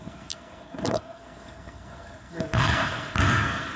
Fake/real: fake